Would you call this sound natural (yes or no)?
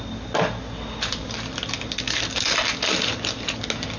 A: yes